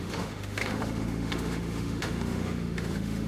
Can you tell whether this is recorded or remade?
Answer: remade